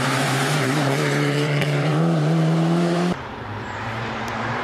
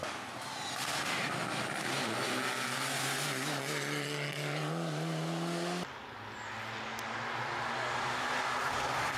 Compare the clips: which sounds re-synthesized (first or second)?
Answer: first